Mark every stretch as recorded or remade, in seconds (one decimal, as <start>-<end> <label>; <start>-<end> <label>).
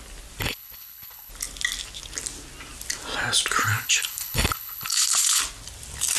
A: 0.0-0.4 recorded; 0.4-1.3 remade; 1.3-3.6 recorded; 3.6-5.4 remade; 5.4-6.2 recorded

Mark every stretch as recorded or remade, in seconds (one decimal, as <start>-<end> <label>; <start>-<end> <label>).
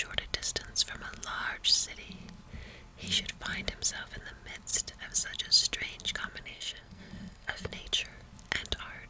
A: 0.0-6.4 recorded; 6.4-7.7 remade; 7.7-9.1 recorded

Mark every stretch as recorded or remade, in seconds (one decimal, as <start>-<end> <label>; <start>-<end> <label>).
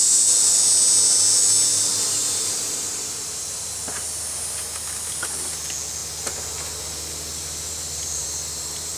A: 0.0-1.7 recorded; 1.7-3.7 remade; 3.7-7.3 recorded; 7.3-9.0 remade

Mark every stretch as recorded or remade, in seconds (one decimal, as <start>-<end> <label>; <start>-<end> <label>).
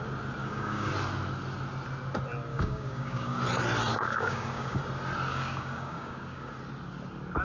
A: 0.0-0.4 recorded; 0.4-0.9 remade; 0.9-2.5 recorded; 2.5-3.4 remade; 3.4-3.9 recorded; 3.9-4.8 remade; 4.8-5.3 recorded; 5.3-6.5 remade; 6.5-7.4 recorded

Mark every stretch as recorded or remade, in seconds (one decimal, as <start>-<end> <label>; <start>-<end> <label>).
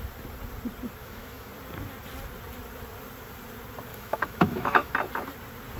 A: 0.0-1.0 recorded; 1.0-1.5 remade; 1.5-3.9 recorded; 3.9-4.9 remade; 4.9-5.8 recorded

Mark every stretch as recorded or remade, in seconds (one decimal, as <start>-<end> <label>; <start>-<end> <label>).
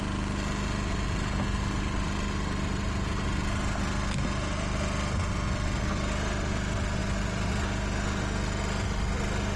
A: 0.0-7.0 recorded; 7.0-7.5 remade; 7.5-9.6 recorded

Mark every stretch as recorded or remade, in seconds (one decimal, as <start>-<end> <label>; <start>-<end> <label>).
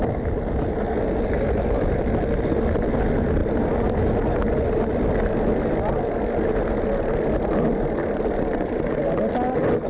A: 0.0-9.9 recorded